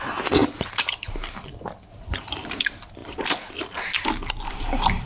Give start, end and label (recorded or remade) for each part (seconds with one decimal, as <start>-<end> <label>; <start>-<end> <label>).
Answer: 0.0-0.4 recorded; 0.4-1.1 remade; 1.1-1.9 recorded; 1.9-2.6 remade; 2.6-5.1 recorded